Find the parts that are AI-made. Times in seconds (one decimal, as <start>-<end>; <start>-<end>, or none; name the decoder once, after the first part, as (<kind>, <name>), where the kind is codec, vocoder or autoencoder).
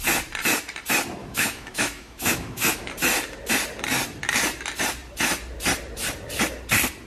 1.2-2.9 (autoencoder, DAC-VAE)